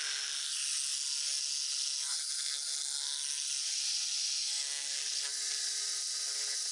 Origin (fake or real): real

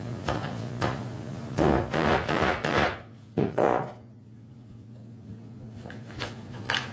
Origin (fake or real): fake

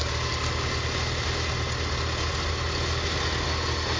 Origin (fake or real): real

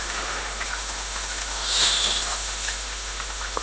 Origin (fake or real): fake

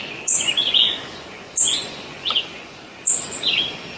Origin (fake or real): fake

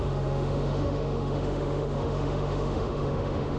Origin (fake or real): fake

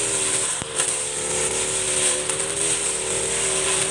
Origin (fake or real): real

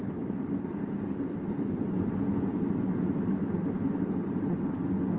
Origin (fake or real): real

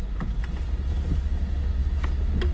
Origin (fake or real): real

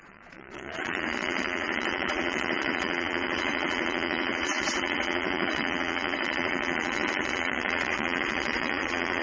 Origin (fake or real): fake